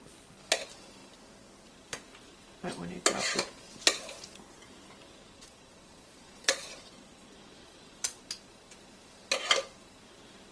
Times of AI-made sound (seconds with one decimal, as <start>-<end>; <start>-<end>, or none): 5.2-8.3